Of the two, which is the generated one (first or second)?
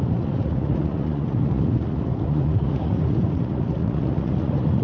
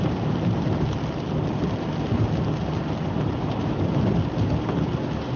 first